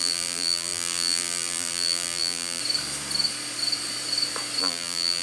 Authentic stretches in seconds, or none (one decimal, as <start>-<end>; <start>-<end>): 2.6-4.6